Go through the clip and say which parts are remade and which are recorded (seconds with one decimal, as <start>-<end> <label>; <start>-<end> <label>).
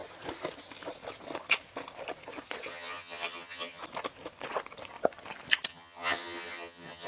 0.0-2.7 recorded; 2.7-3.8 remade; 3.8-5.7 recorded; 5.7-7.1 remade